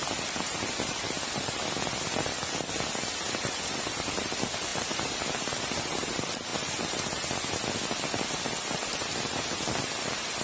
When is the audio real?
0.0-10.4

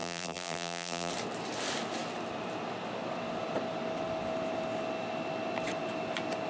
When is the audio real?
1.1-6.5